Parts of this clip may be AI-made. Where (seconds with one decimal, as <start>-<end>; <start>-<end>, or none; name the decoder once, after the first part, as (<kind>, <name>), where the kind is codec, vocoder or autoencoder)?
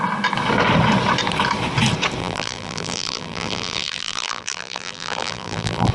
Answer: 2.2-5.9 (vocoder, BigVGAN v2)